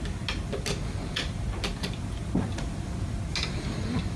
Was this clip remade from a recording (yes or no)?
no